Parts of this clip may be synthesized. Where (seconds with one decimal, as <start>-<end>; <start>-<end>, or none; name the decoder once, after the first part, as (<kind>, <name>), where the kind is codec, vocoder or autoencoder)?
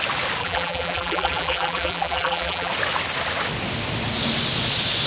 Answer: 0.4-2.7 (vocoder, BigVGAN v2)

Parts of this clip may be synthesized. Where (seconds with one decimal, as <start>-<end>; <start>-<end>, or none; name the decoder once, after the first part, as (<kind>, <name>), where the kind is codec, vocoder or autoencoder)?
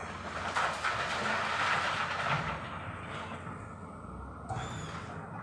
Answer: none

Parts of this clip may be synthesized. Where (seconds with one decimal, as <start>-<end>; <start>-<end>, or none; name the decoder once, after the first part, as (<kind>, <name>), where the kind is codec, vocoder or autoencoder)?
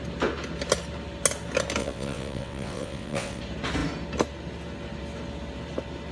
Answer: 1.8-3.4 (vocoder, WaveNeXt)